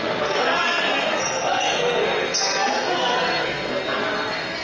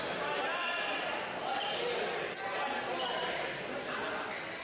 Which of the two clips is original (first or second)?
second